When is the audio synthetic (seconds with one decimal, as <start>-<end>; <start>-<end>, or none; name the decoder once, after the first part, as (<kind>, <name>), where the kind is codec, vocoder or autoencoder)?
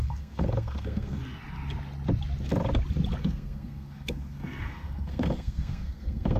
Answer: 0.0-1.2 (codec, SNAC); 3.2-6.4